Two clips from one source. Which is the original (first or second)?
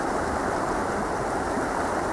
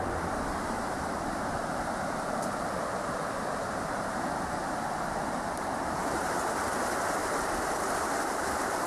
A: first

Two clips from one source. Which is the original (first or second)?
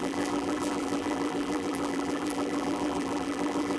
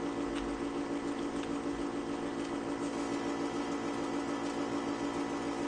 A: second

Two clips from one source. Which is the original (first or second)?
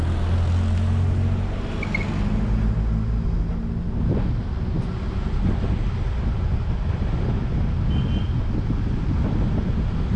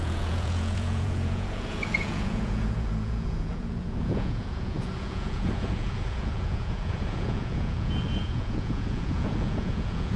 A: first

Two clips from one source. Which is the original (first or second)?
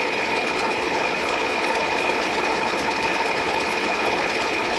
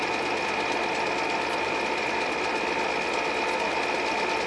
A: second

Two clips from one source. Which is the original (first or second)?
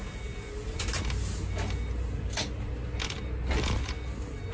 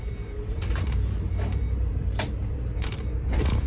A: first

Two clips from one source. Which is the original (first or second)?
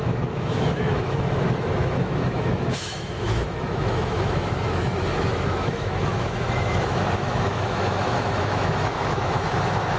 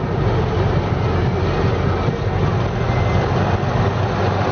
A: second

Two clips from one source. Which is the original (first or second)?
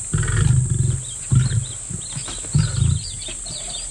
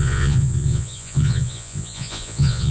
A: first